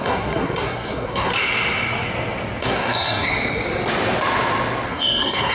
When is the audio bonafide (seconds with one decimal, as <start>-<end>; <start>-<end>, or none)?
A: 1.3-2.6; 3.3-4.9